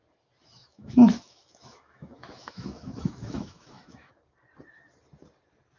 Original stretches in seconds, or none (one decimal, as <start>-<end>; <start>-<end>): 0.0-0.6; 4.1-5.8